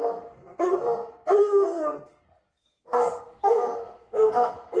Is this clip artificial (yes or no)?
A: yes